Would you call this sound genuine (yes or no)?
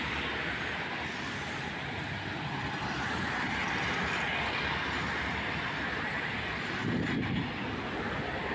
yes